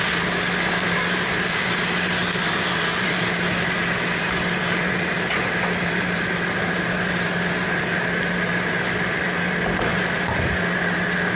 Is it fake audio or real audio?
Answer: real